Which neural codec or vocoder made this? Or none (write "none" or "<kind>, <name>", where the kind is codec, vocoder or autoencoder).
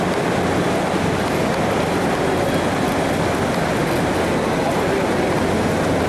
none